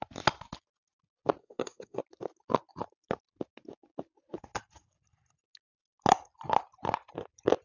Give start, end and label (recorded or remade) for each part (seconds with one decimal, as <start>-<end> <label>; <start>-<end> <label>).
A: 0.0-1.4 recorded; 1.4-2.0 remade; 2.0-7.6 recorded